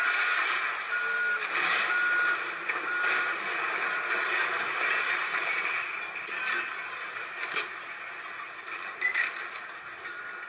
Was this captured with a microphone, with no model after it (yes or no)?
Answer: yes